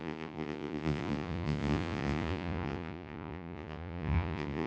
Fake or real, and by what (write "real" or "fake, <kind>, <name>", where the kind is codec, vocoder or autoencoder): fake, vocoder, Vocos